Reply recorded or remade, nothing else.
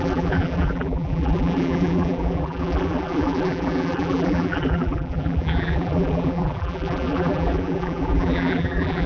remade